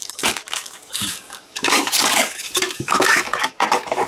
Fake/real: fake